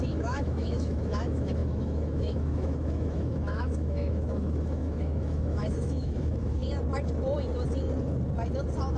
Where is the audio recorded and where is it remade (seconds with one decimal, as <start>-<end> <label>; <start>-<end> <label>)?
0.0-6.6 remade; 6.6-9.0 recorded